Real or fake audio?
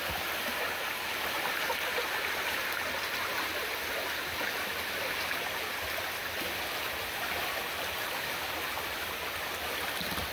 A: real